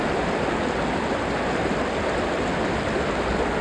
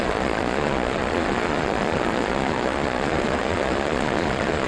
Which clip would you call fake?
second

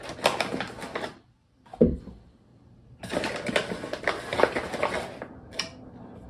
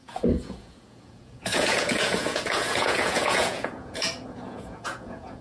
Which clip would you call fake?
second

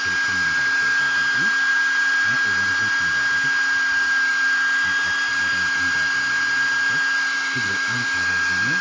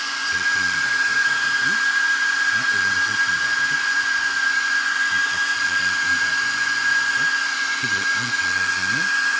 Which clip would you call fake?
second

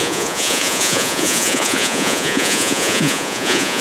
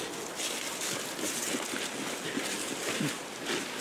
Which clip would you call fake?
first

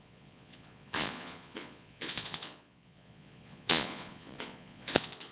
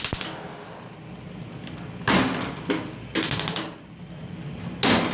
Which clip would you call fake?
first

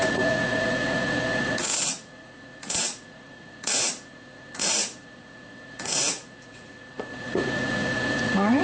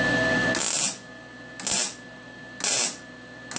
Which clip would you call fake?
first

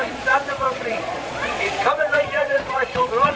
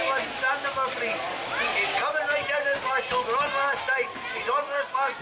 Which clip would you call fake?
first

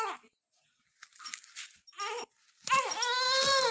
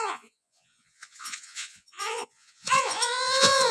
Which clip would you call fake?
second